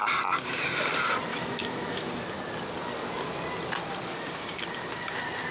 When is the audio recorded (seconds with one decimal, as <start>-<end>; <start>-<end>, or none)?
0.0-1.3; 2.1-5.5